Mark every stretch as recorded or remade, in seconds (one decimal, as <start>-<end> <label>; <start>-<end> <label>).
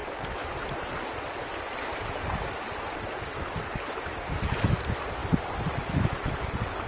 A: 0.0-6.9 recorded